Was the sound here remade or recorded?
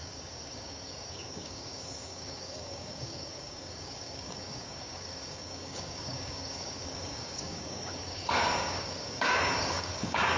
remade